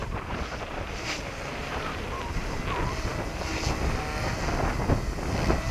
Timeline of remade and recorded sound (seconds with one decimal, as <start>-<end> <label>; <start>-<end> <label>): 0.0-2.6 remade; 2.6-5.7 recorded